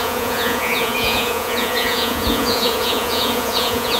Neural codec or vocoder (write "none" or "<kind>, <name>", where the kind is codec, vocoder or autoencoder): vocoder, Vocos